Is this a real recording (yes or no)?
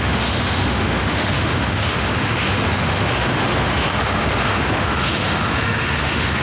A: no